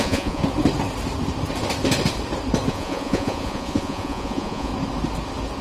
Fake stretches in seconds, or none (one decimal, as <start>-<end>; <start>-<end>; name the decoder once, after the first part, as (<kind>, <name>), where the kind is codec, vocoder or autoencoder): 0.0-0.4 (vocoder, Vocos); 2.7-4.7